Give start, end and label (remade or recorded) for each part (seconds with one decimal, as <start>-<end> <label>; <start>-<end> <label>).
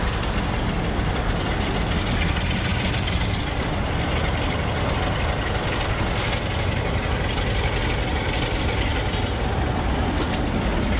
0.0-11.0 recorded